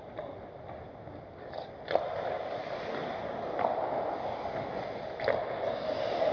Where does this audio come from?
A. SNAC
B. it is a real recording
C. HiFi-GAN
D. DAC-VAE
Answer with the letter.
B